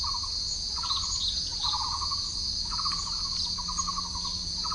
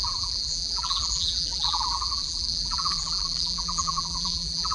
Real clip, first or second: first